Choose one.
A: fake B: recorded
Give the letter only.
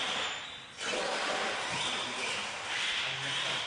B